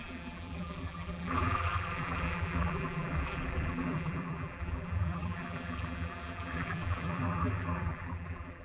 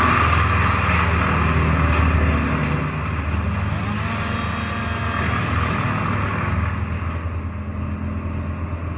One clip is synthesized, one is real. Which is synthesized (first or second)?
first